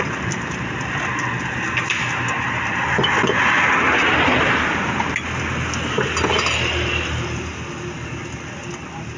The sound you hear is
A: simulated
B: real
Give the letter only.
B